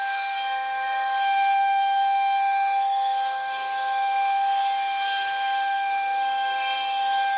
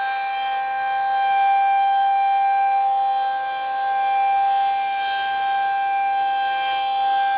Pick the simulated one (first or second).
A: first